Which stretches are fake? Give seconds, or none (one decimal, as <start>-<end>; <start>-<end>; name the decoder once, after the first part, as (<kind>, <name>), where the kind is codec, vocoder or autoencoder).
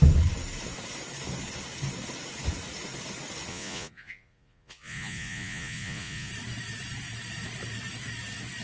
3.5-6.3 (vocoder, Vocos)